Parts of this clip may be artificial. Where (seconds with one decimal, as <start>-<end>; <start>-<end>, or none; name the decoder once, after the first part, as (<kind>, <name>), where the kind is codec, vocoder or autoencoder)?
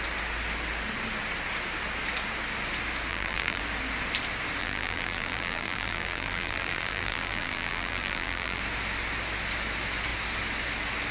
3.1-3.6 (vocoder, BigVGAN v2); 4.6-8.6